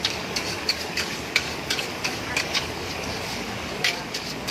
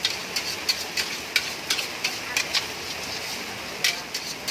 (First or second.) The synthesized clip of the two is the first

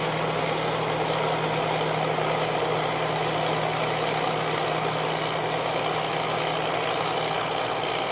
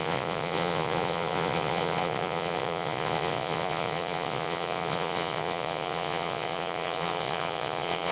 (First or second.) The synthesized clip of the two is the second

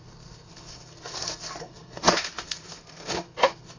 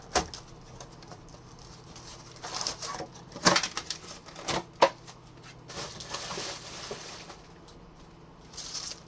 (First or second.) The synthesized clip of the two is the first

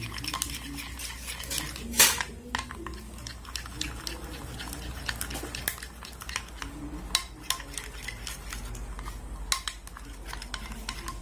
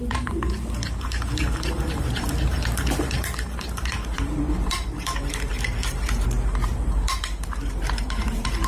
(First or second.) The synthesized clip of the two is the second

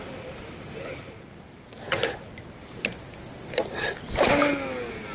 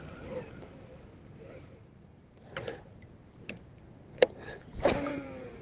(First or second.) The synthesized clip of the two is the second